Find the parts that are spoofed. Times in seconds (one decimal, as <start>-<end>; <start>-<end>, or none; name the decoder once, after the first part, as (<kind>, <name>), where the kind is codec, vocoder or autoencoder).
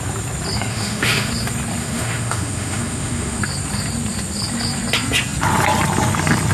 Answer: 0.7-1.3 (autoencoder, DAC-VAE); 1.8-3.4